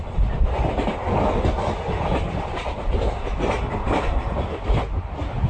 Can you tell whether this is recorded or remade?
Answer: recorded